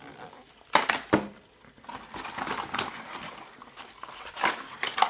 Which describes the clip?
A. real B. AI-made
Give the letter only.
A